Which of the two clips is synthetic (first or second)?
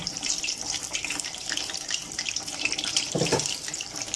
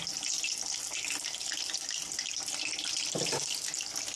first